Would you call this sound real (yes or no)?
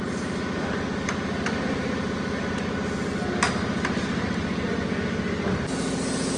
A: yes